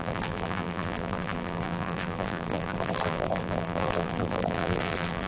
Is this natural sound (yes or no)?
no